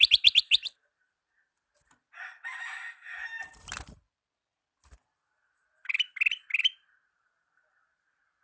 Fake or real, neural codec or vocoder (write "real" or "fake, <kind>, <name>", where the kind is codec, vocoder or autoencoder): fake, vocoder, BigVGAN v2